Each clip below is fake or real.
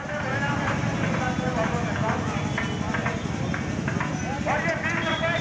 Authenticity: real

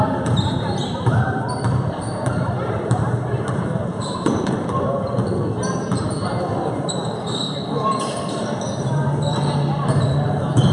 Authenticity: fake